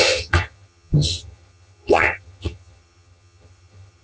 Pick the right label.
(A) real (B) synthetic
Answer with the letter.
B